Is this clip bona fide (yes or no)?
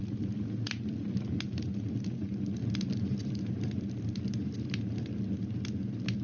yes